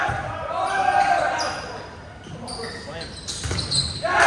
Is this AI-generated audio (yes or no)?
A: no